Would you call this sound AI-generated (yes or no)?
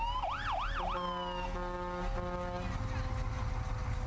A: no